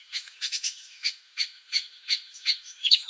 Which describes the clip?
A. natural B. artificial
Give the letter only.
B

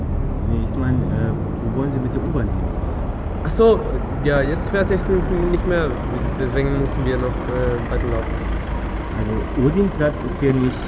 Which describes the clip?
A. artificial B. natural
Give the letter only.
B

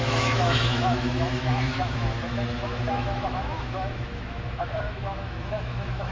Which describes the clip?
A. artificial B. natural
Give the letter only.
A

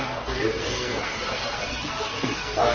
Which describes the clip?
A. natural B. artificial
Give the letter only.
B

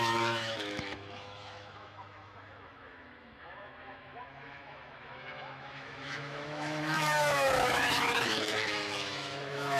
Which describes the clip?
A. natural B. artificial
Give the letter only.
B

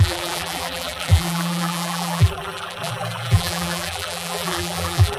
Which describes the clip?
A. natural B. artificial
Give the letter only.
B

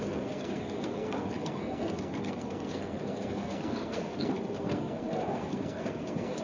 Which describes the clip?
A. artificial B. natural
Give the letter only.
A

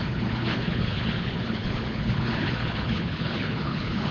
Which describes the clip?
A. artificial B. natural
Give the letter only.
A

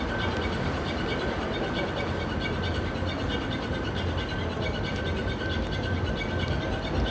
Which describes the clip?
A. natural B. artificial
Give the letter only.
A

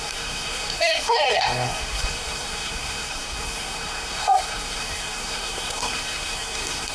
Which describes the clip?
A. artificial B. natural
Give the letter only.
A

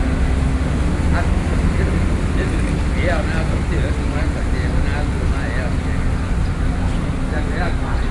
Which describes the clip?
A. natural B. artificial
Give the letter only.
A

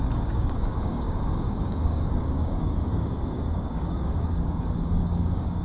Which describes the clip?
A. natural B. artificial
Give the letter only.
B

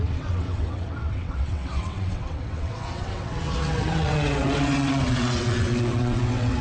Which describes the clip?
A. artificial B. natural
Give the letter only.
A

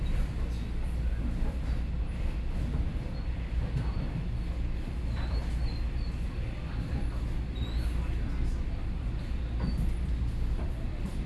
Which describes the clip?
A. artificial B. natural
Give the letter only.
B